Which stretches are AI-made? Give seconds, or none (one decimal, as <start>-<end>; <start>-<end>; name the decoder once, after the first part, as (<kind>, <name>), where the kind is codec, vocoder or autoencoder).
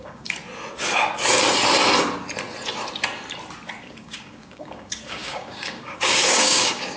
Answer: 0.0-0.4 (codec, DAC); 3.8-7.0